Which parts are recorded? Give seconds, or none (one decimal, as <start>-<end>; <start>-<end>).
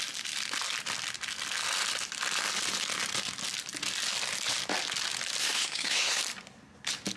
0.0-5.4; 6.2-7.2